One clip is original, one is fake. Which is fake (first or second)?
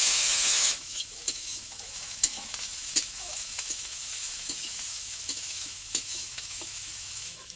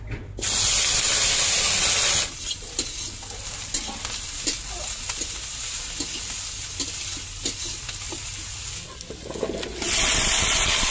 first